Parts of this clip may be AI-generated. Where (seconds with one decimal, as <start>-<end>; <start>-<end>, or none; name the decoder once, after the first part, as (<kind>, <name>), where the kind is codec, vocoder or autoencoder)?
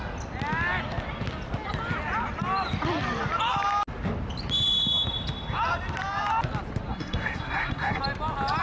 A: 6.9-8.0 (codec, SNAC)